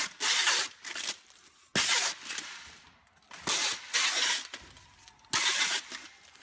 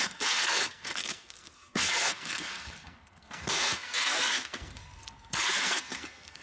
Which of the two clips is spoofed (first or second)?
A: second